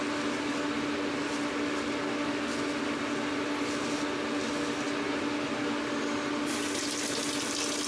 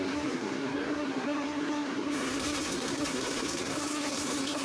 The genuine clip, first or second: first